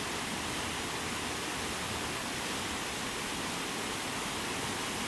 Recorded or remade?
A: recorded